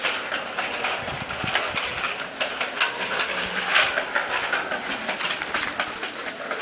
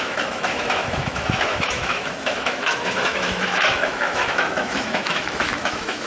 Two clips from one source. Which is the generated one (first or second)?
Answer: second